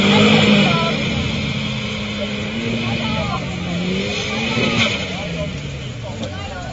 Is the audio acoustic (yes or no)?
yes